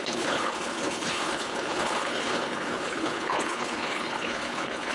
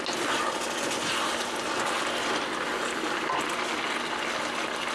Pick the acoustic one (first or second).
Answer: second